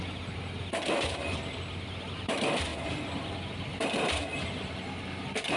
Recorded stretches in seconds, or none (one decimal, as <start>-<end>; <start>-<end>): 0.0-5.6